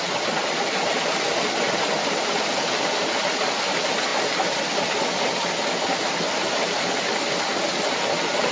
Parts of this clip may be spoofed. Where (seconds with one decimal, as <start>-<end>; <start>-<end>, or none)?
none